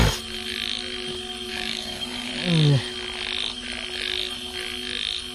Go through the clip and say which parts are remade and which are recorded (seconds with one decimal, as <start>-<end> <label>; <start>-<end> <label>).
0.0-1.5 recorded; 1.5-2.3 remade; 2.3-5.3 recorded